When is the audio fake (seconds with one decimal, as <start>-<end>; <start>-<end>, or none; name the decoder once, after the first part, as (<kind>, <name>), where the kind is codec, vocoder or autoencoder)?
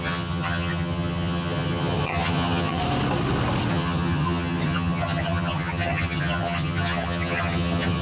0.0-2.8 (vocoder, HiFi-GAN); 3.7-8.0